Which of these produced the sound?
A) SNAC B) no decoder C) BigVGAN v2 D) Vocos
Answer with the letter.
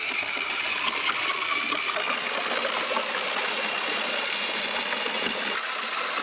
B